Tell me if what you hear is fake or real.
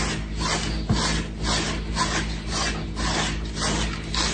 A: real